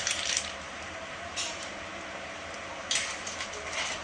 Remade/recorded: remade